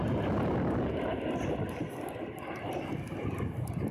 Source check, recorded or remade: recorded